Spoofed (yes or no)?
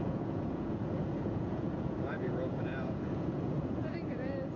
yes